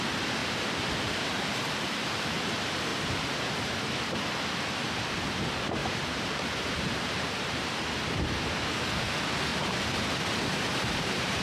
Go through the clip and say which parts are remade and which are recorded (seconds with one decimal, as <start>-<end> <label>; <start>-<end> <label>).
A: 0.0-2.9 recorded; 2.9-3.8 remade; 3.8-5.8 recorded; 5.8-7.8 remade; 7.8-9.5 recorded; 9.5-11.4 remade